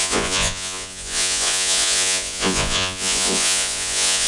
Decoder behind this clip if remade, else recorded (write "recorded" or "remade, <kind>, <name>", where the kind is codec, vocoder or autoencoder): remade, vocoder, Vocos